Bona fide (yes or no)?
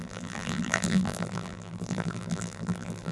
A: no